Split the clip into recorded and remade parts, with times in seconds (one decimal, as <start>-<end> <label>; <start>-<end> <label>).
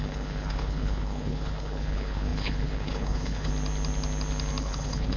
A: 0.0-3.5 remade; 3.5-4.6 recorded; 4.6-5.2 remade